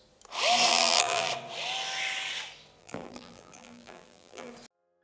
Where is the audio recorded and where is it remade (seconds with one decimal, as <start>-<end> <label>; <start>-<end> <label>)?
0.0-0.7 recorded; 0.7-1.3 remade; 1.3-2.8 recorded; 2.8-4.5 remade; 4.5-5.0 recorded